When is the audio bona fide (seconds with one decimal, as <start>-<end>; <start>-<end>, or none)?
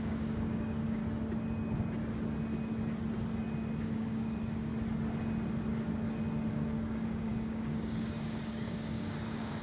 1.0-3.8; 4.7-6.5